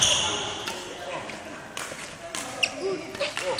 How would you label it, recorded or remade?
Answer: recorded